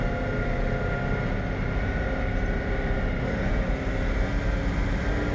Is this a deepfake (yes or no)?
no